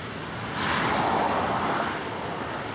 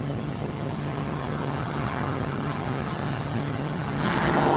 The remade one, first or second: second